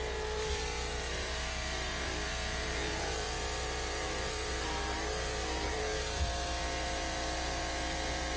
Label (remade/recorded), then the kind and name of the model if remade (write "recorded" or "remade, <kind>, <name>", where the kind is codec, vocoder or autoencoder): remade, vocoder, BigVGAN v2